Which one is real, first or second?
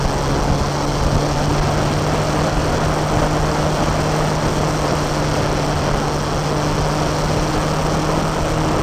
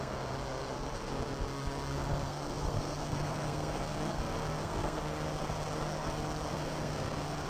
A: first